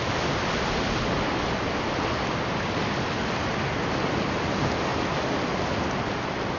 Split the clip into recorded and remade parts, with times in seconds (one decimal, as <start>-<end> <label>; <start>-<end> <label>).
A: 0.0-6.6 recorded